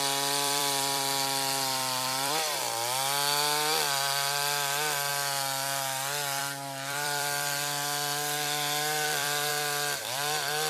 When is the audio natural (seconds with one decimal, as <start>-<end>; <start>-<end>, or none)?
5.1-6.4; 9.5-10.0